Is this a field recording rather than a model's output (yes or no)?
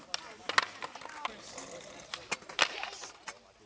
yes